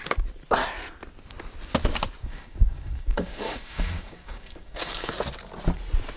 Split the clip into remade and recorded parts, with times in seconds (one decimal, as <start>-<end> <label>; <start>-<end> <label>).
0.0-2.2 recorded; 2.2-5.1 remade; 5.1-6.2 recorded